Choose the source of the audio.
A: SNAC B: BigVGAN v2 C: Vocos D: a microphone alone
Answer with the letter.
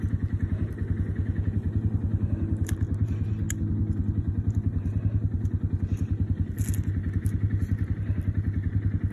D